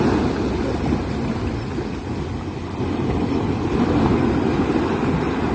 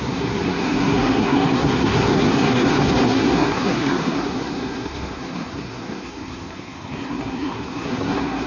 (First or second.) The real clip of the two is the first